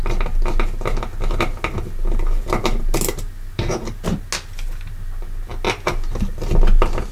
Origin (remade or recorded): recorded